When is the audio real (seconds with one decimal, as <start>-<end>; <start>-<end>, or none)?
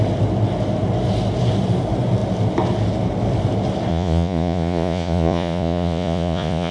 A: 0.0-3.9